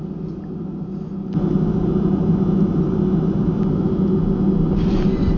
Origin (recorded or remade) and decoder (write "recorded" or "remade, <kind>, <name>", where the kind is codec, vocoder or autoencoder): recorded